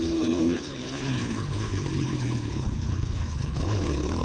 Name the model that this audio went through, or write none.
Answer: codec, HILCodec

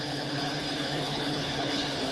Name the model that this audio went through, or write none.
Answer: codec, HILCodec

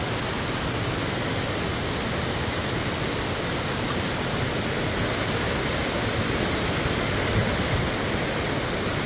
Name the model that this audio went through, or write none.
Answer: none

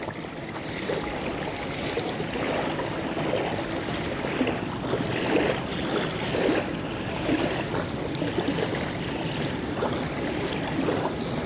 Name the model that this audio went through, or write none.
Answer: none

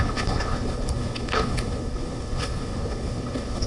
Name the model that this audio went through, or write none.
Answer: codec, HILCodec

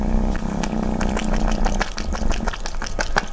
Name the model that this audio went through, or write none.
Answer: none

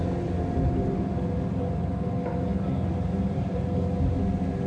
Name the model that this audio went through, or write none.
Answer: none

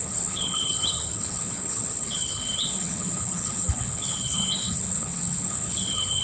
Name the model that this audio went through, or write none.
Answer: codec, HILCodec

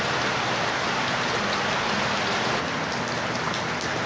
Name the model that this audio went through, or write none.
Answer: none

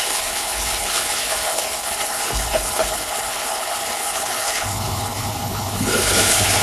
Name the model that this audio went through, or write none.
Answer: codec, HILCodec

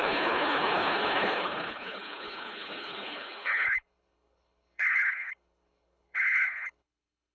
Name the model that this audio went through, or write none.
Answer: codec, HILCodec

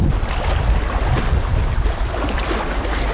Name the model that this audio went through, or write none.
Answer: none